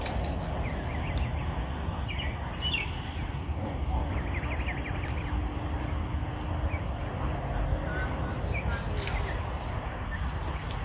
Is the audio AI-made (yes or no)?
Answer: no